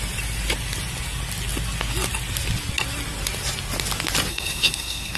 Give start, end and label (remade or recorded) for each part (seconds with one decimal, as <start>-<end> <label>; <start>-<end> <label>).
0.0-4.3 recorded; 4.3-5.2 remade